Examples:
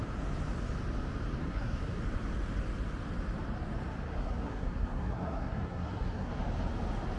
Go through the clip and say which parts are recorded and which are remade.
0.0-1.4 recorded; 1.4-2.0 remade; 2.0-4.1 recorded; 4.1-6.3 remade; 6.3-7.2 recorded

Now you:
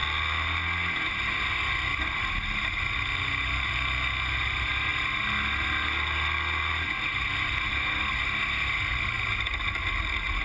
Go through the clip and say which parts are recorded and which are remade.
0.0-10.4 recorded

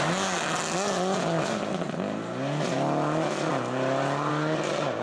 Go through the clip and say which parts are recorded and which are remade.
0.0-5.0 recorded

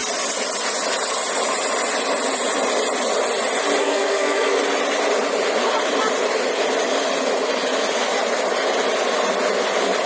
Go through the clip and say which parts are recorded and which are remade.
0.0-3.8 recorded; 3.8-4.6 remade; 4.6-10.1 recorded